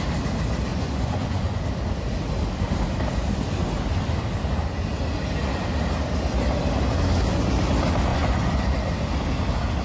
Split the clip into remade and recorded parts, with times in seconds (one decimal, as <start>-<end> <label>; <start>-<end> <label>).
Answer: 0.0-0.7 recorded; 0.7-1.6 remade; 1.6-8.1 recorded; 8.1-8.7 remade; 8.7-9.8 recorded